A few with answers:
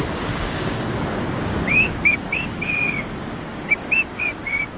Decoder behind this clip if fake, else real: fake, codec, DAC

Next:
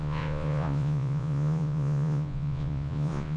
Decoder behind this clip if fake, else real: fake, vocoder, Vocos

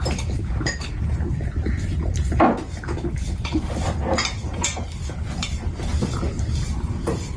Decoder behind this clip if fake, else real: real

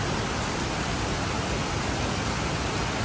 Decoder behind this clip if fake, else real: real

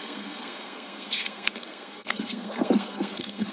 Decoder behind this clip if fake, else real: fake, codec, SNAC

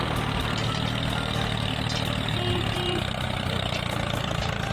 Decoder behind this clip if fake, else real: real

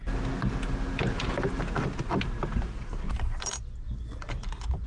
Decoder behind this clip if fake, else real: real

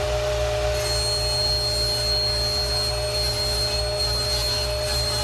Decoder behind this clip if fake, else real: real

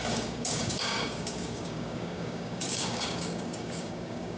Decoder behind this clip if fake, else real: fake, codec, DAC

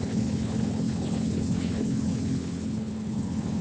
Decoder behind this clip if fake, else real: fake, codec, HILCodec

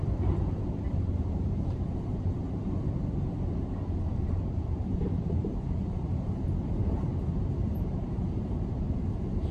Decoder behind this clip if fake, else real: fake, vocoder, BigVGAN v2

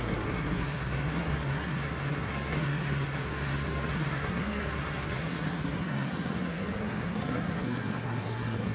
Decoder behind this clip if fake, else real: fake, codec, SNAC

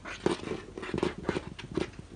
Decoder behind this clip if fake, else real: real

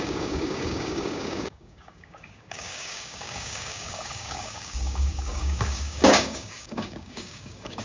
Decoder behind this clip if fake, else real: fake, codec, DAC